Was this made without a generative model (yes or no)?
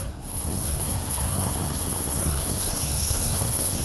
no